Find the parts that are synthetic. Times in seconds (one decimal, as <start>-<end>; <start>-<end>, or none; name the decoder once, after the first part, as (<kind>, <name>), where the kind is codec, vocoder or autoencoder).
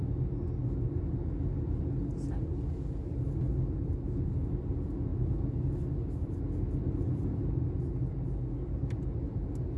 none